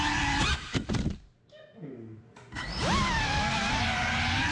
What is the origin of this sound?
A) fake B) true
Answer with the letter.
B